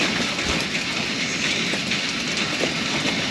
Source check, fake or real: real